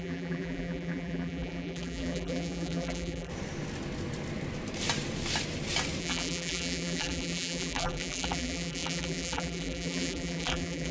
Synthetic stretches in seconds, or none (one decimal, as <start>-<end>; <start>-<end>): 0.0-3.3; 6.0-10.9